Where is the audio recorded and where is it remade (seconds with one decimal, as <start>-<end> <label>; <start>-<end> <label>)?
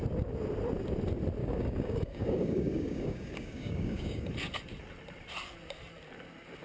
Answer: 0.0-1.4 recorded; 1.4-4.3 remade; 4.3-6.6 recorded